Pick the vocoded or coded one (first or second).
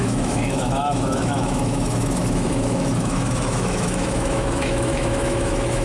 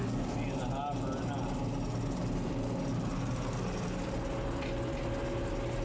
first